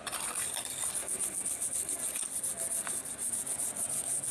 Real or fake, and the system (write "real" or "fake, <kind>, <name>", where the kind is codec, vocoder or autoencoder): real